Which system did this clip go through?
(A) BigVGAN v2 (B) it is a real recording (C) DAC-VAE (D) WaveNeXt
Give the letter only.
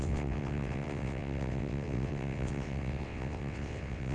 D